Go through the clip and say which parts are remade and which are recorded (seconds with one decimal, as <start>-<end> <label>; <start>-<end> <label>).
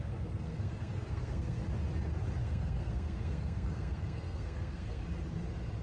0.0-1.6 remade; 1.6-2.4 recorded; 2.4-5.0 remade; 5.0-5.8 recorded